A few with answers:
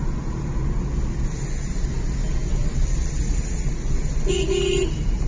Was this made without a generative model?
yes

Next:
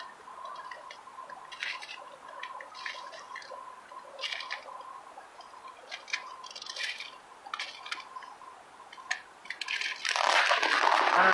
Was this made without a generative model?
yes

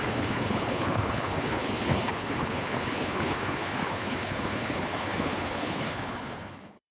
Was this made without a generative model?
no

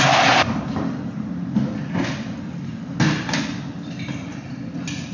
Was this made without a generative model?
yes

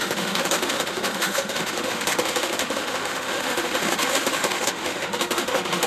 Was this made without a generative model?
no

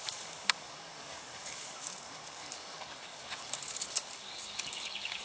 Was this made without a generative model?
no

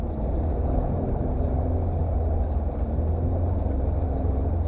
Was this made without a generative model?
yes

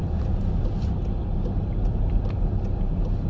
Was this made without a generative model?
yes